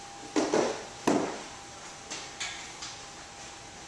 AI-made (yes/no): no